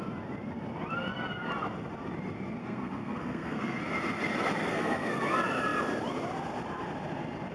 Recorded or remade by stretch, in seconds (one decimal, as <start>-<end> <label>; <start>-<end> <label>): 0.0-2.6 recorded; 2.6-3.8 remade; 3.8-4.6 recorded; 4.6-5.2 remade; 5.2-7.5 recorded